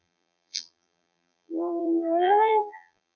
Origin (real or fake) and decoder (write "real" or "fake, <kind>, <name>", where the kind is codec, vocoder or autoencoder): fake, vocoder, BigVGAN v2